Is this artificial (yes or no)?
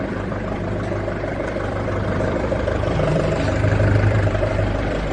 yes